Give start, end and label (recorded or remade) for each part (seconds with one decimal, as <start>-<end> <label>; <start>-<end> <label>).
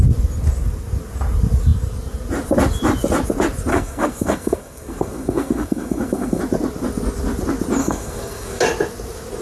0.0-3.7 recorded; 3.7-6.4 remade; 6.4-7.8 recorded; 7.8-8.6 remade; 8.6-9.4 recorded